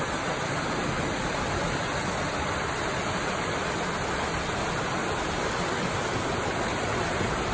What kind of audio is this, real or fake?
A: real